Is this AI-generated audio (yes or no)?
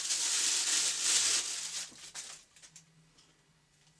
no